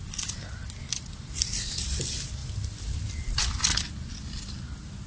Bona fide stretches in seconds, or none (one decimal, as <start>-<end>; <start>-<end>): 0.0-5.1

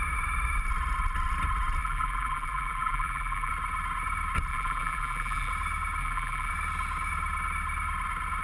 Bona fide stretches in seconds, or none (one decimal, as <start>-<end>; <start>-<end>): 0.0-1.8; 3.5-4.5; 5.5-6.0; 6.5-8.4

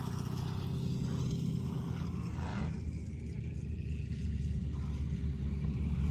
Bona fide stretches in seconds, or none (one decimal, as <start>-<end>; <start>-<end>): 0.0-6.1

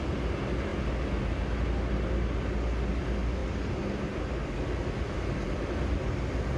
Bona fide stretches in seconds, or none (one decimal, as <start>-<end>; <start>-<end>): 0.0-6.6

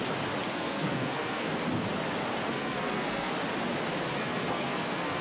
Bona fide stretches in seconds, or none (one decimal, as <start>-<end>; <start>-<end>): 0.0-0.5; 1.5-2.5; 3.3-4.1

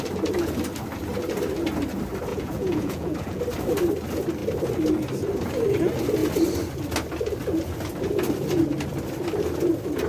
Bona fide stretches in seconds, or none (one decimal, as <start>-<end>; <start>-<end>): 0.0-2.3; 3.4-10.1

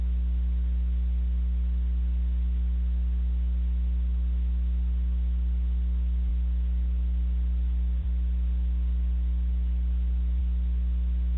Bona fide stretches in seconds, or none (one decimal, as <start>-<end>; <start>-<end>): 0.0-6.3; 10.4-11.4

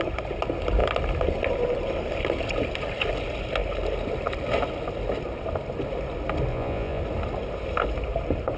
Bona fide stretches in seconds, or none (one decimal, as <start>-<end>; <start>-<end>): 0.0-6.5; 7.0-8.6